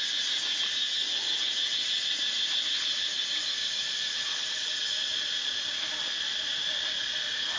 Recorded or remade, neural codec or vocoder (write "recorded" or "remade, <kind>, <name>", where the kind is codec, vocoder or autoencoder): recorded